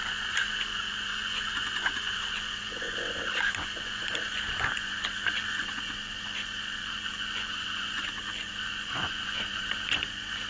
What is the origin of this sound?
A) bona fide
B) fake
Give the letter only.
B